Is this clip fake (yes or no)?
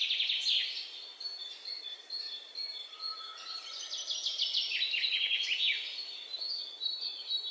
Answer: no